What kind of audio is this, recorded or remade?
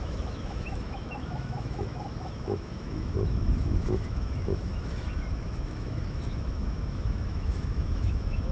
remade